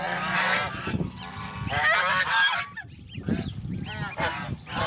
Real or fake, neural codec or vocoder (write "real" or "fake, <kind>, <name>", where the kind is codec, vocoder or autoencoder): real